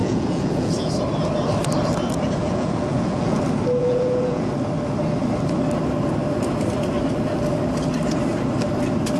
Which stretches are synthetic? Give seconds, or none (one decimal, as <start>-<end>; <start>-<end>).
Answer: 0.0-0.9; 2.4-3.4; 3.8-4.5